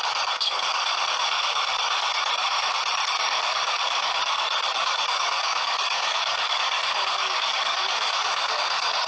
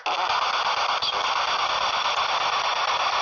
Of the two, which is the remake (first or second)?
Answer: first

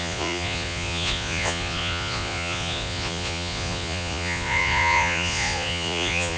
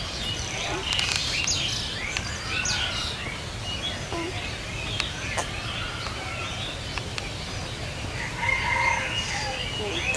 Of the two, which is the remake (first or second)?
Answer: first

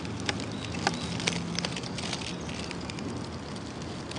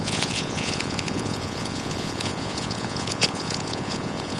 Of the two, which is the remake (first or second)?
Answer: second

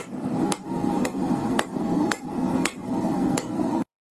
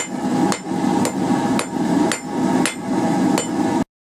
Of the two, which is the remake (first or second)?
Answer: first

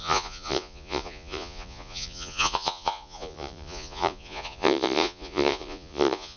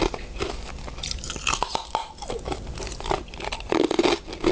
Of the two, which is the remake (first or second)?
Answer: first